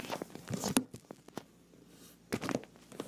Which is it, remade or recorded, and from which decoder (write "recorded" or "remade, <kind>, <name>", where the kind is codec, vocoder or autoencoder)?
recorded